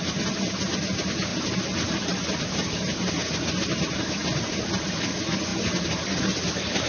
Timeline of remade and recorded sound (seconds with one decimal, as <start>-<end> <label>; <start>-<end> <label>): 0.0-1.3 remade; 1.3-2.1 recorded; 2.1-3.2 remade; 3.2-5.1 recorded; 5.1-5.5 remade; 5.5-6.9 recorded